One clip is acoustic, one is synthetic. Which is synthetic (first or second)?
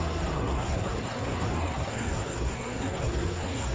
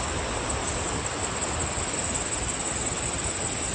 first